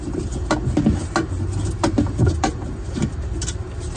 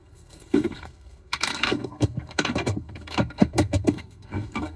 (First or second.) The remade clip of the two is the second